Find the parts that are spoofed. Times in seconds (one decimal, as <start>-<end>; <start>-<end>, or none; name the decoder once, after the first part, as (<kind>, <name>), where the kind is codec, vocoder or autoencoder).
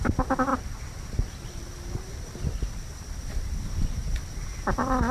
0.5-3.1 (vocoder, BigVGAN v2); 4.0-5.1